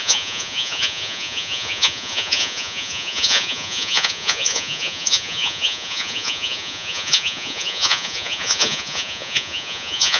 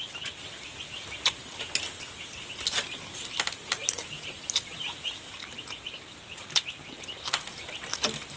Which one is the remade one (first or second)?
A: first